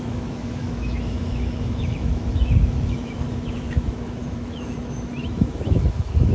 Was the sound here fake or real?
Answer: fake